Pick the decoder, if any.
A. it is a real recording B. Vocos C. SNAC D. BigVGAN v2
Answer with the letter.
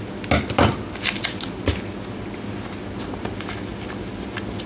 A